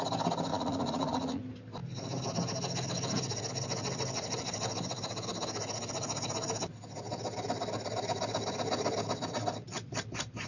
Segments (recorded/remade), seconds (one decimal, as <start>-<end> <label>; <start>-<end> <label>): 0.0-0.5 recorded; 0.5-1.4 remade; 1.4-10.5 recorded